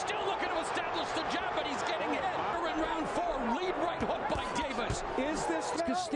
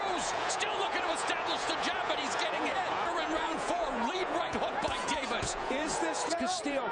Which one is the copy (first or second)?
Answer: second